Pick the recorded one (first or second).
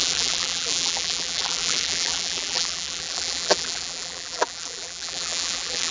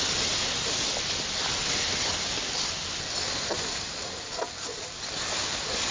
second